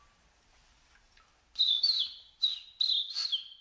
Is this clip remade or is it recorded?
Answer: recorded